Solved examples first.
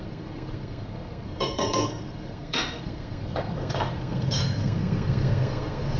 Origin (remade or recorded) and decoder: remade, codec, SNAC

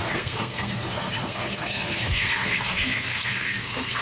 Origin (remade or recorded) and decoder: remade, codec, SNAC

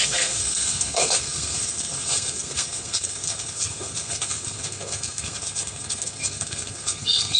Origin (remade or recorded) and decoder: remade, codec, SNAC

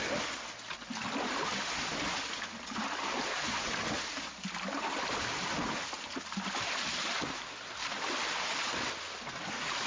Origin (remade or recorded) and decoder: recorded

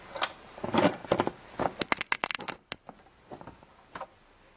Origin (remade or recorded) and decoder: recorded